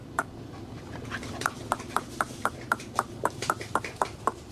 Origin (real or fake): fake